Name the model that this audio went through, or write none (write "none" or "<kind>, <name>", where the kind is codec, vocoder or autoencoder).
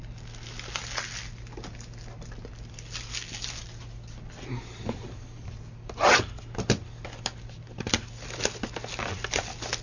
none